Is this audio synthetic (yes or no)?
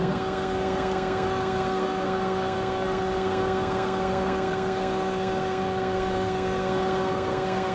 yes